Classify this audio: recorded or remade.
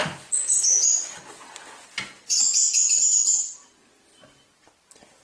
recorded